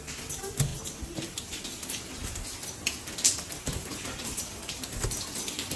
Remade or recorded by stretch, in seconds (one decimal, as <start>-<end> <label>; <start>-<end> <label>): 0.0-5.8 recorded